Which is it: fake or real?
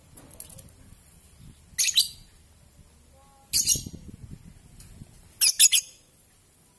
real